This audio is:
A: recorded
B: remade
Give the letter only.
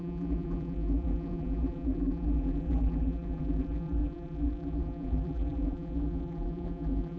B